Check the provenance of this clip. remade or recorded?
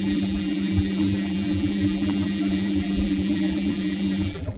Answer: remade